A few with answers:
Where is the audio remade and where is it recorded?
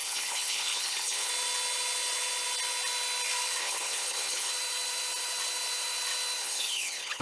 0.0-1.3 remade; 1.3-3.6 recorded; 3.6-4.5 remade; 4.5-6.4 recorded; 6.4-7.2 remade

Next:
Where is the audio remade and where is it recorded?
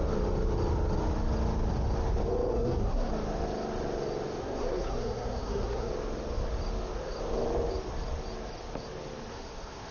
0.0-2.5 recorded; 2.5-3.1 remade; 3.1-4.4 recorded; 4.4-5.9 remade; 5.9-9.3 recorded; 9.3-9.9 remade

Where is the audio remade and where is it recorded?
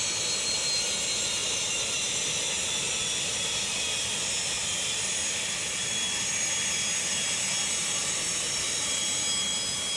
0.0-7.8 recorded; 7.8-9.0 remade; 9.0-10.0 recorded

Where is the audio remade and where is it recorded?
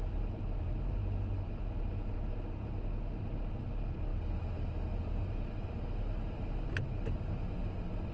0.0-8.1 recorded